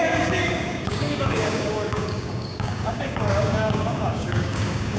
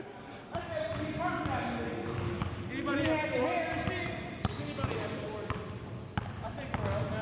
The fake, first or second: first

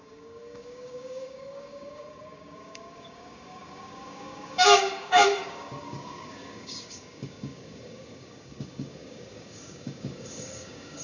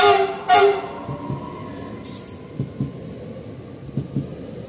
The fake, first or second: first